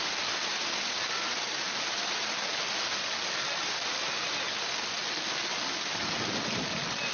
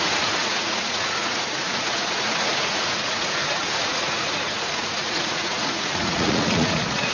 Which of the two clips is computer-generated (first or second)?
second